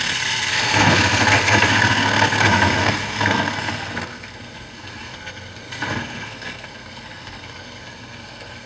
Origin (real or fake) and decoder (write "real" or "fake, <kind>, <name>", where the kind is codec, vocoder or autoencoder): fake, codec, SNAC